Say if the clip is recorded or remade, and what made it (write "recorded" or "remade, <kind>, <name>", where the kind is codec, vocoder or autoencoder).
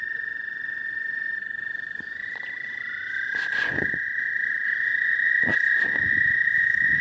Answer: remade, vocoder, Vocos